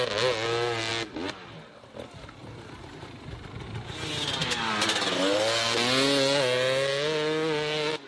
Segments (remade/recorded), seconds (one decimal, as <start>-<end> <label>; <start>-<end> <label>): 0.0-8.1 recorded